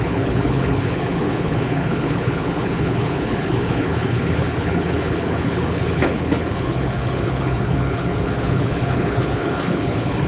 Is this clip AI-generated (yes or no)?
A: yes